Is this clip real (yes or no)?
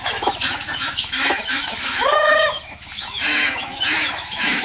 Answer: no